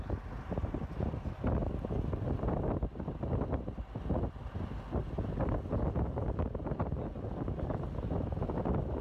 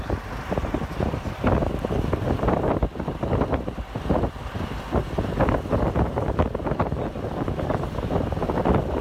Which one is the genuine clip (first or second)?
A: first